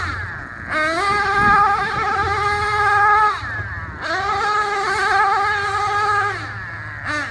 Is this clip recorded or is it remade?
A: recorded